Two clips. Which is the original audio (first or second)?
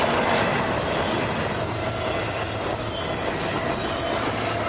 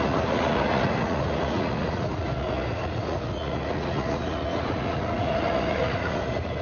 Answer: first